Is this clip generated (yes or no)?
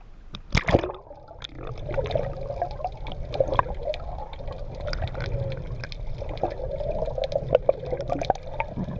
no